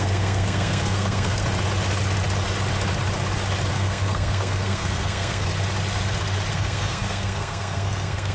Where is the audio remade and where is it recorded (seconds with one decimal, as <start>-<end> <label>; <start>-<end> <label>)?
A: 0.0-1.4 remade; 1.4-3.7 recorded; 3.7-5.5 remade; 5.5-6.5 recorded; 6.5-8.3 remade